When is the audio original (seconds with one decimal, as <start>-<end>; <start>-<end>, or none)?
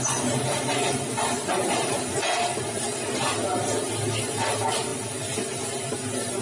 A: 0.0-6.4